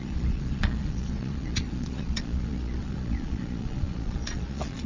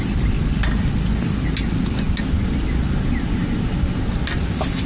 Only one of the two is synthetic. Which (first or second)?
first